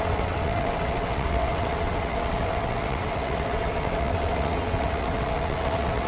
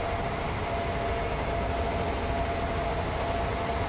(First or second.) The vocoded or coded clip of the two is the first